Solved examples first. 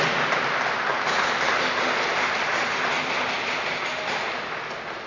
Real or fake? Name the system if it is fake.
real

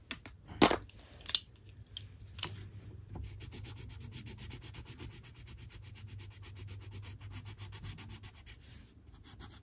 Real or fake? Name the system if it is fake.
real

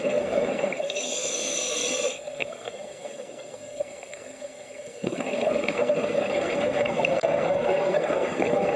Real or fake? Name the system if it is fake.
fake, codec, SNAC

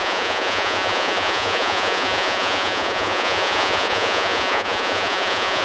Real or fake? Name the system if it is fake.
fake, vocoder, Vocos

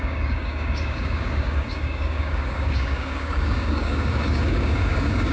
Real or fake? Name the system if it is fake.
fake, codec, DAC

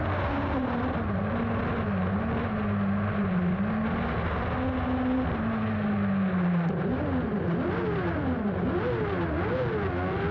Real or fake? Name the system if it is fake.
real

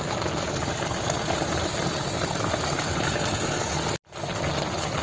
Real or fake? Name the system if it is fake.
real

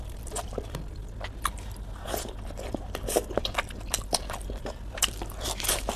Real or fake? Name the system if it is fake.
fake, vocoder, BigVGAN v2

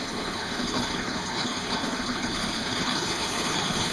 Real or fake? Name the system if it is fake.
fake, codec, HILCodec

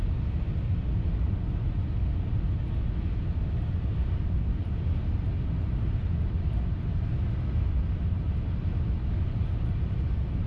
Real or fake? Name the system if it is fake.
real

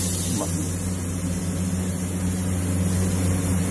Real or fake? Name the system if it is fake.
real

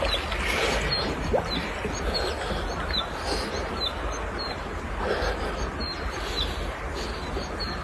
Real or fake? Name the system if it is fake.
real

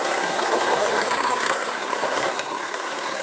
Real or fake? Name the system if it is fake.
fake, codec, SNAC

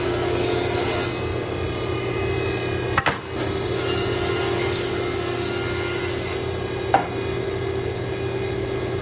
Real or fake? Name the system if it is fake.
real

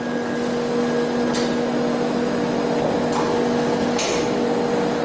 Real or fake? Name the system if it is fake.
real